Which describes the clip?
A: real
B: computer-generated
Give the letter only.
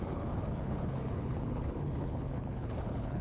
B